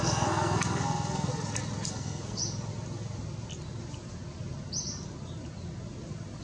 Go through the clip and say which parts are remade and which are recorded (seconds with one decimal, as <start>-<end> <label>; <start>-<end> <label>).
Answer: 0.0-1.3 remade; 1.3-1.9 recorded; 1.9-2.4 remade; 2.4-6.4 recorded